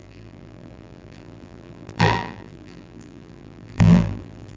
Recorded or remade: remade